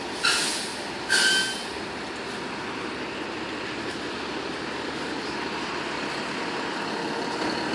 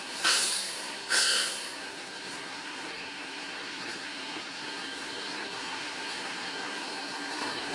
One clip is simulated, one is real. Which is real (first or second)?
first